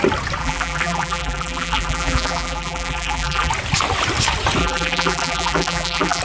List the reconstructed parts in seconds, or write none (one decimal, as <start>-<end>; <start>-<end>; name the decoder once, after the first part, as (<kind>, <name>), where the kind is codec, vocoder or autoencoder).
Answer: 0.4-3.5 (vocoder, BigVGAN v2); 4.6-6.2